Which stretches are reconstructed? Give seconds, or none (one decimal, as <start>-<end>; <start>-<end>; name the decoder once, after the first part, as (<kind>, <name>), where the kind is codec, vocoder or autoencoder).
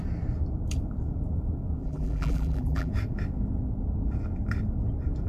1.8-2.9 (vocoder, BigVGAN v2)